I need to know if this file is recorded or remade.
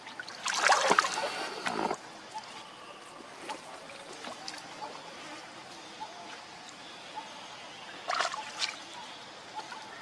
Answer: recorded